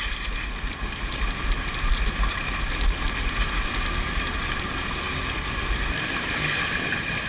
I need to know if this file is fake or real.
real